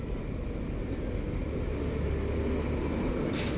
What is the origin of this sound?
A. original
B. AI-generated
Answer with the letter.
A